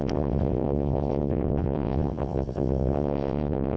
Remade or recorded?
remade